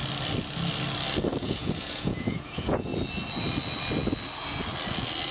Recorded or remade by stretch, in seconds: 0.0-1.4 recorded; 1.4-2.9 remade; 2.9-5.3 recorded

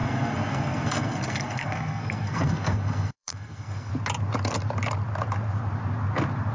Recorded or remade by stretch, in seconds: 0.0-3.9 remade; 3.9-6.5 recorded

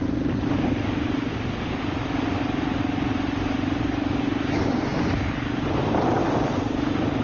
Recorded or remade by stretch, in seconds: 0.0-1.8 recorded; 1.8-7.2 remade

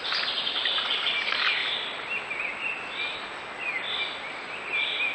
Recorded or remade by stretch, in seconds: 0.0-5.1 recorded

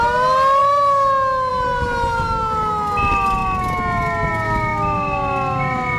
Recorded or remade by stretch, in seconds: 0.0-6.0 recorded

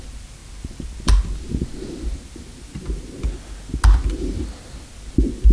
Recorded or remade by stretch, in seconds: 0.0-5.5 recorded

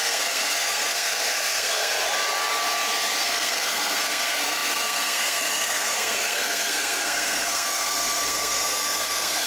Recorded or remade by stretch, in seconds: 0.0-1.9 remade; 1.9-3.2 recorded; 3.2-9.5 remade